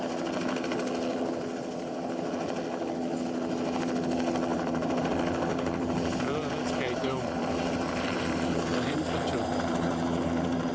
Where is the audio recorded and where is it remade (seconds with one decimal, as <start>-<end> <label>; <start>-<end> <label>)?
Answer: 0.0-4.5 recorded; 4.5-5.1 remade; 5.1-5.5 recorded; 5.5-10.7 remade